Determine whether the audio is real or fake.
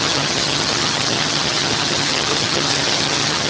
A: fake